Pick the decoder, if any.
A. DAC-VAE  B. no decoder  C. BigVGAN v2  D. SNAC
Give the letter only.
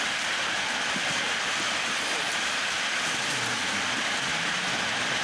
B